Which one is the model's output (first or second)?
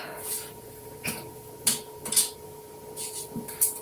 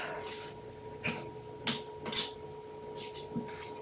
first